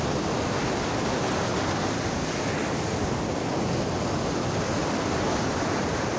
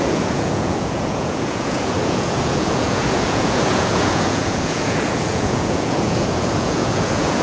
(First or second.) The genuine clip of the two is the first